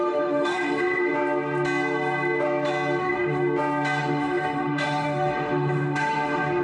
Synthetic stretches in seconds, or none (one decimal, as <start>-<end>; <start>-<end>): 0.0-1.1; 3.0-3.4; 4.0-6.6